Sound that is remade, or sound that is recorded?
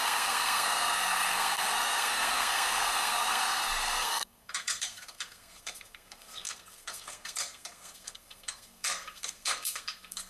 remade